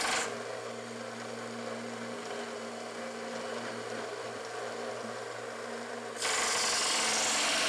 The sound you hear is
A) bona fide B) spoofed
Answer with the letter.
A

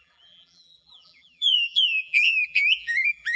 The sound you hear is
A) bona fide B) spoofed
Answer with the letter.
B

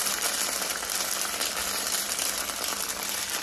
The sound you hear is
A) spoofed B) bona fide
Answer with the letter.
A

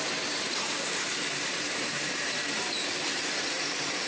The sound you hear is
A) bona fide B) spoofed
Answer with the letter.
B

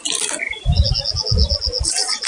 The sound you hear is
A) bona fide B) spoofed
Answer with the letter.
A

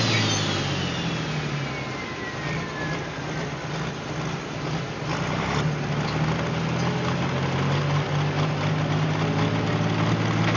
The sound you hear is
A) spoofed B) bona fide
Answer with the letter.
B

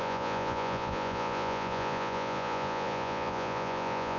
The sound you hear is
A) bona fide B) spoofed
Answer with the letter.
B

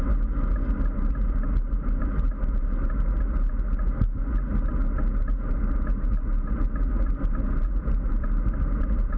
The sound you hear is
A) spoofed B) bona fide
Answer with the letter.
B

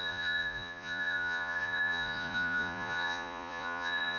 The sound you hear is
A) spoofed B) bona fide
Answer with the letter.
A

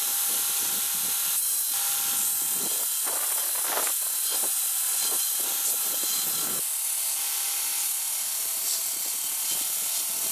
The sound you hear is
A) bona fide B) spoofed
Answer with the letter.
A